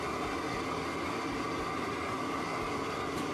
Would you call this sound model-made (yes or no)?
no